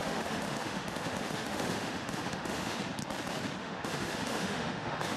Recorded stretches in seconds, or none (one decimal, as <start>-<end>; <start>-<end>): 2.8-3.6